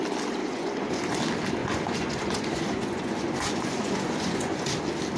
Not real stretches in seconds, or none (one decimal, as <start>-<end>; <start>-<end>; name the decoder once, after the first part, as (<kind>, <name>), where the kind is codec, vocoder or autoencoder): 0.4-1.2 (vocoder, Vocos); 1.6-4.7